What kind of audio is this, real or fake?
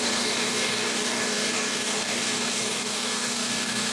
fake